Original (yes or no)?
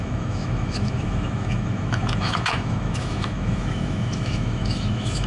no